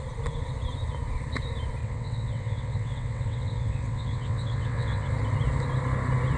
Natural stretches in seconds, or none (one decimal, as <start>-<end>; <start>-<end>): 0.0-1.8; 5.1-6.4